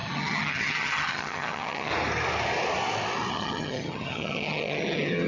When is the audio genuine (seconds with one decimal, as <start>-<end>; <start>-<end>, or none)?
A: 1.9-3.3